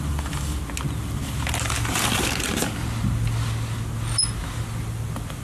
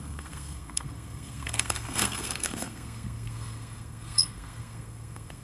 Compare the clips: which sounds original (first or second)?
first